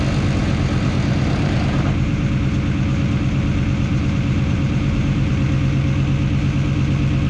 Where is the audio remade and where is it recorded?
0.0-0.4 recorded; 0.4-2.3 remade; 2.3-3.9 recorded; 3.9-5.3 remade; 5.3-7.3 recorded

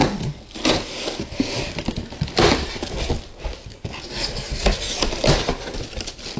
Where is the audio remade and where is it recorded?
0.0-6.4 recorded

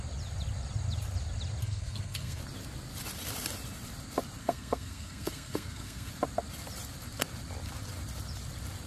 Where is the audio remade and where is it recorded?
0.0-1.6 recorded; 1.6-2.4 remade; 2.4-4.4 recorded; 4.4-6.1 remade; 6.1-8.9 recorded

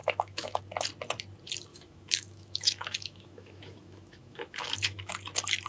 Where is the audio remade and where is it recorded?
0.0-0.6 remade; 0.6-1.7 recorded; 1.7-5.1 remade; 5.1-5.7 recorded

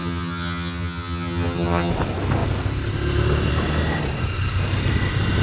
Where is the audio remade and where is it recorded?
0.0-1.9 remade; 1.9-5.4 recorded

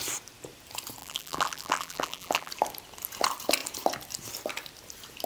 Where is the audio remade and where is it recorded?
0.0-1.0 recorded; 1.0-2.5 remade; 2.5-5.3 recorded